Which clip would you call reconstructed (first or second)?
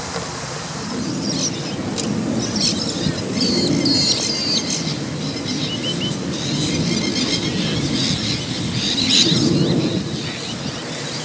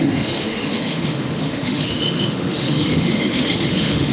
second